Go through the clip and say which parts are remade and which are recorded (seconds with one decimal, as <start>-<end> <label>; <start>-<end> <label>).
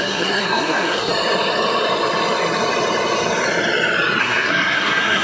0.0-1.1 remade; 1.1-4.2 recorded; 4.2-5.2 remade